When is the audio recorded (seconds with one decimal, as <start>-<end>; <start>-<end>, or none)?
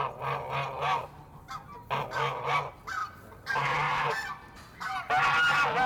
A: 0.0-3.0; 4.3-5.9